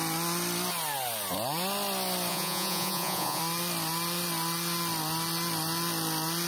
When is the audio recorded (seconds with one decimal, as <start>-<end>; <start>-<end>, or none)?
0.0-2.3; 3.4-6.5